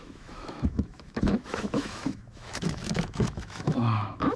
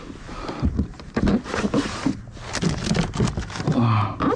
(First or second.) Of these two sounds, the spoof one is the first